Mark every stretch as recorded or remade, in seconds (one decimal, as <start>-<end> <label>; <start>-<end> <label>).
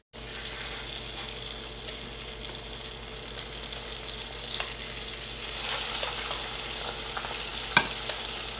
0.0-8.6 recorded